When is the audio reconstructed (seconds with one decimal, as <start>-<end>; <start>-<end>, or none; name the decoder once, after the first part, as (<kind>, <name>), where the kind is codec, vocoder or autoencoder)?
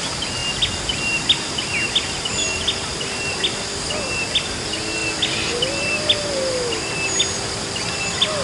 none